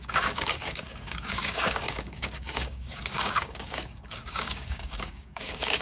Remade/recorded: remade